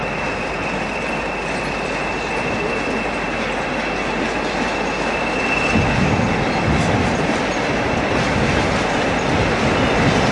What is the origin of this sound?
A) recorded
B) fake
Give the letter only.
A